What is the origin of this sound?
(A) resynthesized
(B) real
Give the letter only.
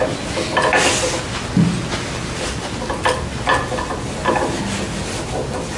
B